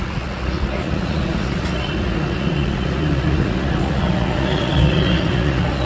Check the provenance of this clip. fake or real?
fake